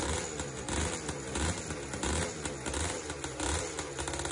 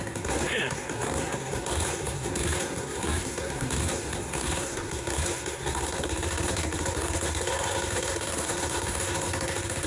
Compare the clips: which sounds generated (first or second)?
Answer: second